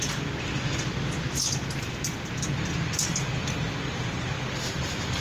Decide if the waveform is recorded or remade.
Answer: recorded